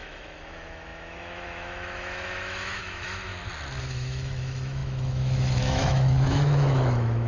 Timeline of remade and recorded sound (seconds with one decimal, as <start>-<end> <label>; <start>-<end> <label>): 0.0-3.3 remade; 3.3-3.8 recorded; 3.8-7.3 remade